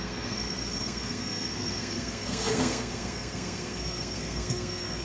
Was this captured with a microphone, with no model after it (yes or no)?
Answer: no